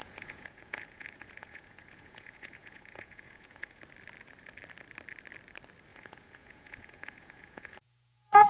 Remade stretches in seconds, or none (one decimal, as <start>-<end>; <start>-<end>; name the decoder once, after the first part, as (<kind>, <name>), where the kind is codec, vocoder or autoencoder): 0.0-3.8 (vocoder, Vocos); 5.9-8.5